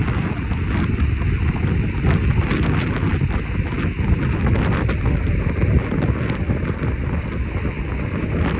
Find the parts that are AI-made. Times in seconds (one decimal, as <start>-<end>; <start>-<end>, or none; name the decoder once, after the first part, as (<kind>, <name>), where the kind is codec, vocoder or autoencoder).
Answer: none